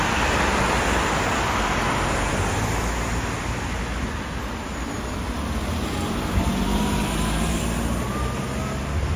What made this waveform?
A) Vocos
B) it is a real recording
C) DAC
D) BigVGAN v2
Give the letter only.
B